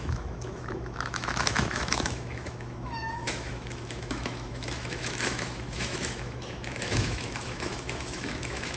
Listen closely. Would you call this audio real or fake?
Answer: fake